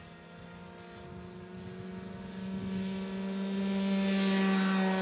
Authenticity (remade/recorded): recorded